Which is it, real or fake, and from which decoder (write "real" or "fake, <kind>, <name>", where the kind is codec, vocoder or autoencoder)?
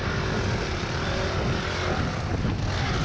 real